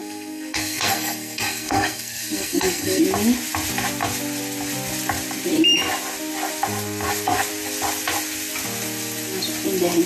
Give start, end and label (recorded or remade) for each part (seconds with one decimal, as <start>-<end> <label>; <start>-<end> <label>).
0.0-3.0 remade; 3.0-10.1 recorded